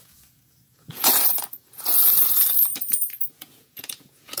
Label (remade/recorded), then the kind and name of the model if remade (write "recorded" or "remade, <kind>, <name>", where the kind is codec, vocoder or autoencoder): remade, vocoder, Vocos